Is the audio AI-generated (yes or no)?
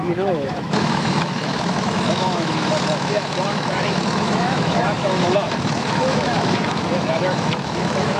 yes